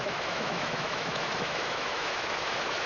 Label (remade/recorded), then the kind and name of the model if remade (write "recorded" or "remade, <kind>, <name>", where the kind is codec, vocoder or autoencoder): remade, autoencoder, DAC-VAE